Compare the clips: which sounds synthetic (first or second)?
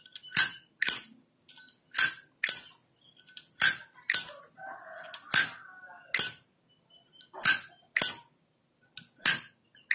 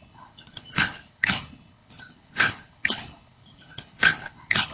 second